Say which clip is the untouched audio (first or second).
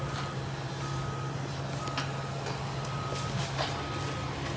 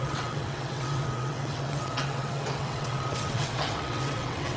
first